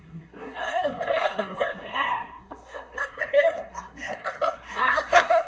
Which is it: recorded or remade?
remade